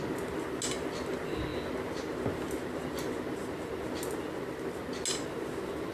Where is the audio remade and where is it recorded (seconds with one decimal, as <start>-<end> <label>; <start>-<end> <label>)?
0.0-5.9 recorded